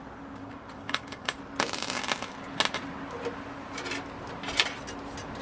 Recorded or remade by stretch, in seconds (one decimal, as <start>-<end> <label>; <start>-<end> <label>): 0.0-0.4 recorded; 0.4-1.4 remade; 1.4-5.4 recorded